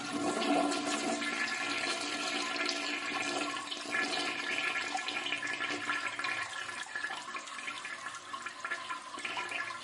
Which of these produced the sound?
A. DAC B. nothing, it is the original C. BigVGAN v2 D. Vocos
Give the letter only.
B